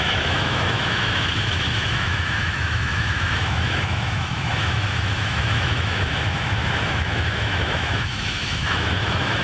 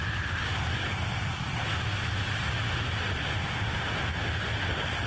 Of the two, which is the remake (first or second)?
first